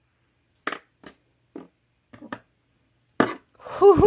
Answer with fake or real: real